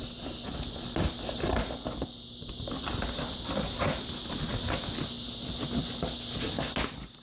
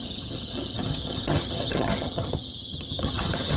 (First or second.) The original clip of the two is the first